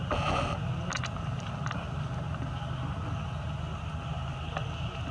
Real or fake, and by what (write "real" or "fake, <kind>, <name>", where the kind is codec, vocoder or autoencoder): real